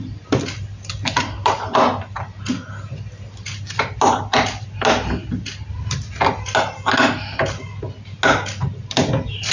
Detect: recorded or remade recorded